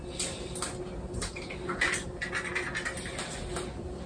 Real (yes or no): yes